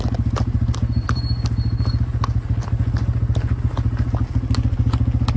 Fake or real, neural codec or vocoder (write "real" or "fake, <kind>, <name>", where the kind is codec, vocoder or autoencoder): real